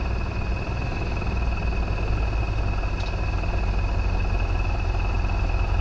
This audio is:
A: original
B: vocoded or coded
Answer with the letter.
A